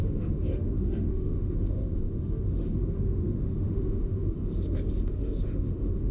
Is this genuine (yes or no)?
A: no